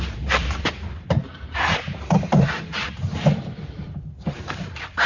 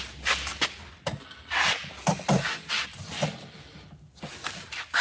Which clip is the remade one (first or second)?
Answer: first